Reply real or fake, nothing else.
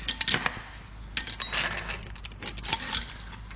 real